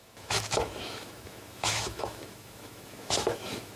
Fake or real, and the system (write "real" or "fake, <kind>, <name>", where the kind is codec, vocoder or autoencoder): fake, autoencoder, DAC-VAE